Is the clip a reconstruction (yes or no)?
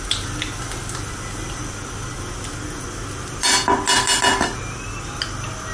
no